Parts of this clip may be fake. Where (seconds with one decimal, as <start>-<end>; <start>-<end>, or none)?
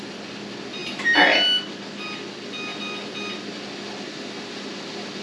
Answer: none